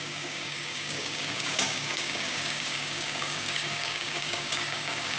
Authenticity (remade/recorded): remade